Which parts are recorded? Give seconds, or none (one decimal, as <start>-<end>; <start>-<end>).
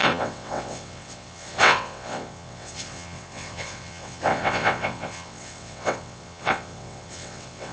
none